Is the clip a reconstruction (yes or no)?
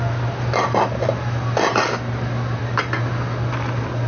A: no